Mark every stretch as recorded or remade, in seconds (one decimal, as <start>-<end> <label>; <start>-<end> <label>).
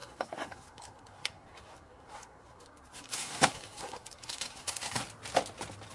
0.0-5.0 remade; 5.0-5.9 recorded